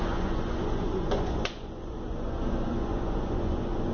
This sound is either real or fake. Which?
fake